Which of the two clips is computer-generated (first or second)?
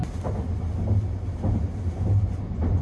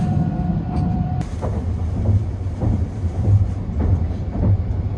second